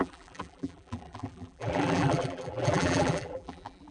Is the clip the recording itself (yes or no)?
no